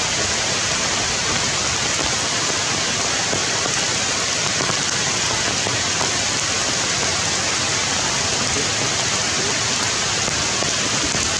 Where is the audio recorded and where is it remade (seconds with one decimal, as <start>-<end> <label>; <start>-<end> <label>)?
0.0-11.4 recorded